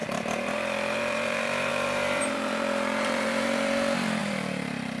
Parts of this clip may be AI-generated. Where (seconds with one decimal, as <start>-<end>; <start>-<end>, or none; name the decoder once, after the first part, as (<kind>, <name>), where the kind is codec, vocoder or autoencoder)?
0.0-5.0 (vocoder, BigVGAN v2)